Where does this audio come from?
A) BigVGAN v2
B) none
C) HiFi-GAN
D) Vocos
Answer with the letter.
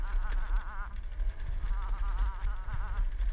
B